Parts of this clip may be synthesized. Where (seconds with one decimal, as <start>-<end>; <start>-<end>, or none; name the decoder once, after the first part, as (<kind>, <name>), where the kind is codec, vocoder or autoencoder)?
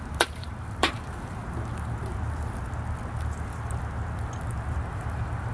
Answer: 0.0-1.4 (vocoder, BigVGAN v2); 4.7-5.5